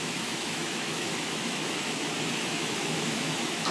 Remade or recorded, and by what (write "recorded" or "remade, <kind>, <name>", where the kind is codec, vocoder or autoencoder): remade, autoencoder, DAC-VAE